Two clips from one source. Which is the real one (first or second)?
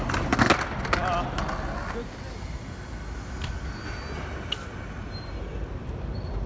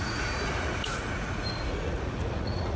first